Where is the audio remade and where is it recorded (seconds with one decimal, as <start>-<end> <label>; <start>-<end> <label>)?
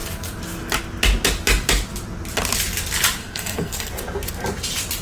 0.0-3.2 recorded; 3.2-3.9 remade; 3.9-5.0 recorded